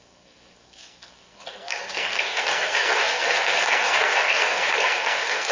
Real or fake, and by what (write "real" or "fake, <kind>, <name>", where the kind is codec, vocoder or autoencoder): fake, codec, SNAC